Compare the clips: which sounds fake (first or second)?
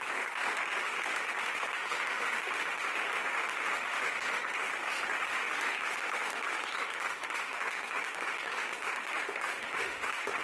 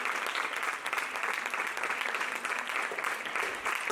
first